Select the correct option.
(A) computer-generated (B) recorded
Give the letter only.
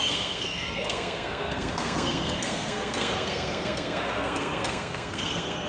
A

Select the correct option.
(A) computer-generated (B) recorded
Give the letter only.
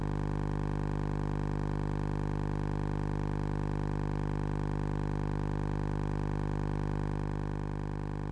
B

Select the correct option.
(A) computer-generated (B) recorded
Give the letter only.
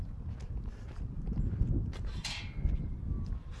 B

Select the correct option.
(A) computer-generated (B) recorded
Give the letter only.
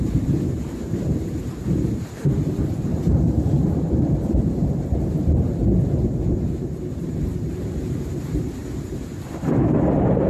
A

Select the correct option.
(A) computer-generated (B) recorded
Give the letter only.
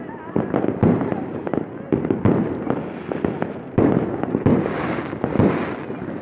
B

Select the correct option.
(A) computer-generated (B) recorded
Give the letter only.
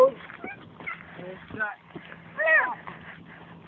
B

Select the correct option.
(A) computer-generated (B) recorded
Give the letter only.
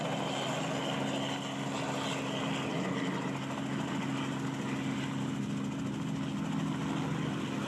B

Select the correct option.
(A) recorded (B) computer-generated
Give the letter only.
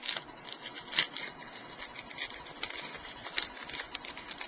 A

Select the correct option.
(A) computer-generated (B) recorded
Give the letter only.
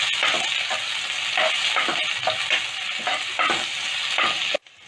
B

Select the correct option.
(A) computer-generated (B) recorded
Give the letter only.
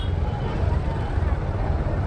B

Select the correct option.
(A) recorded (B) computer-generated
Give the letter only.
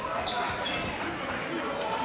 A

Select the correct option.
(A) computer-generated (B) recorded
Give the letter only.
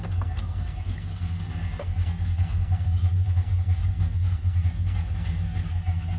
A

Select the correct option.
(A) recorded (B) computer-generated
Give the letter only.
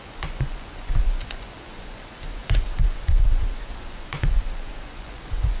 B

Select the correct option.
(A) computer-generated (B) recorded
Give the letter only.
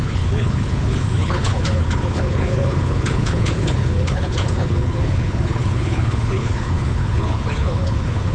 A